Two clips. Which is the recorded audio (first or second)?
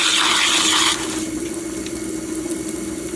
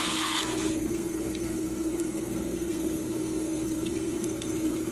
first